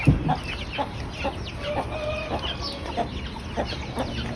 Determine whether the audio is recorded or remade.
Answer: recorded